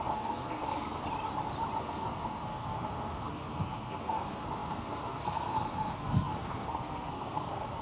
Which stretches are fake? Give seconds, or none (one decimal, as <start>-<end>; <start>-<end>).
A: 0.0-1.0; 1.8-7.8